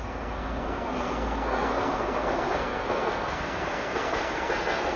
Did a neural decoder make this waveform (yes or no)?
yes